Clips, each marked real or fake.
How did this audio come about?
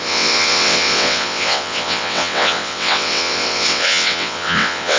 fake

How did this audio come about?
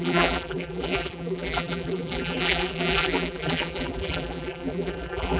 fake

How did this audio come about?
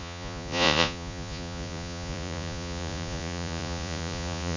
fake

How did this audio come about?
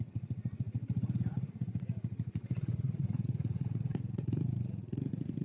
fake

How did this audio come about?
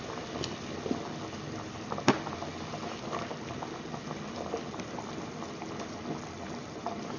fake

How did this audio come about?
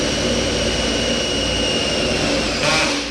real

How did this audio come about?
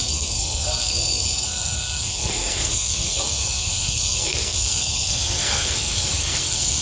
fake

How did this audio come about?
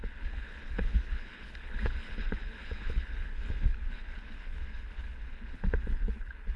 fake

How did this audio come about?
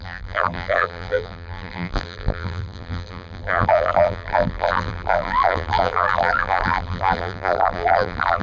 fake